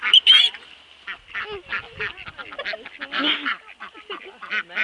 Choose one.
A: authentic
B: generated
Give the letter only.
A